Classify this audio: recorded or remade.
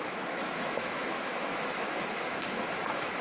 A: remade